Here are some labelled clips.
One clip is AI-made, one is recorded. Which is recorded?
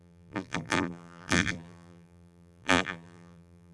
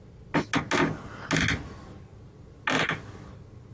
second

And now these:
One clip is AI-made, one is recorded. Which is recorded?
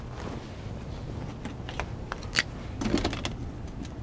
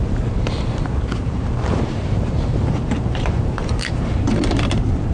first